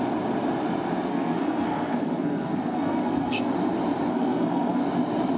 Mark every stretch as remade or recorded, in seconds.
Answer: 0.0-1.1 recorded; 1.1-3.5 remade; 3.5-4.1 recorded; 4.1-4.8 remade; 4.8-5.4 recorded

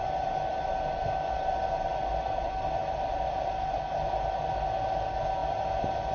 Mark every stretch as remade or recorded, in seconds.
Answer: 0.0-6.1 recorded

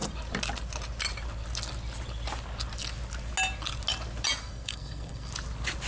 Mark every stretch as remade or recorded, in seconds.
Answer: 0.0-4.4 recorded; 4.4-5.3 remade; 5.3-5.9 recorded

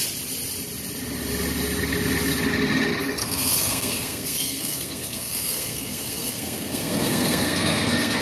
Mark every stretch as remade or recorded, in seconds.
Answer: 0.0-3.2 recorded; 3.2-8.2 remade

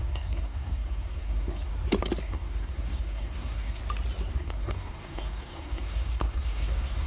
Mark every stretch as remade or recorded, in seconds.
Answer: 0.0-1.7 remade; 1.7-2.2 recorded; 2.2-3.8 remade; 3.8-4.3 recorded; 4.3-7.1 remade

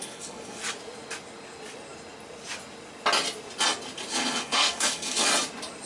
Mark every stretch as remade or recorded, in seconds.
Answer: 0.0-0.6 remade; 0.6-4.1 recorded; 4.1-5.3 remade; 5.3-5.9 recorded